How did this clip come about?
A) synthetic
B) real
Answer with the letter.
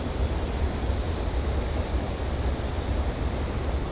B